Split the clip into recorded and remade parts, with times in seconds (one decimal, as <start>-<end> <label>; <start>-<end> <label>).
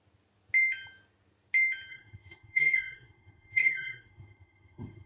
0.0-1.9 recorded; 1.9-5.1 remade